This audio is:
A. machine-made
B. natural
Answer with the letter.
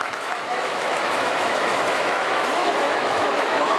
A